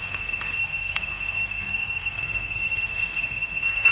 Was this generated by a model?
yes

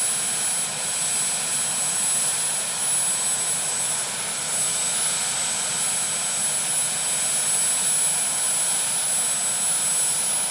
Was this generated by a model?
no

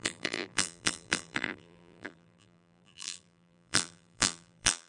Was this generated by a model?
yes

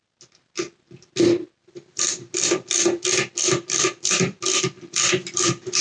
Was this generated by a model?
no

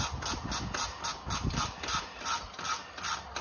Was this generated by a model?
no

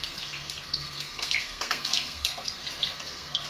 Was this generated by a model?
yes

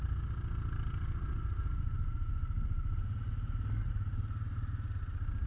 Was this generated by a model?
no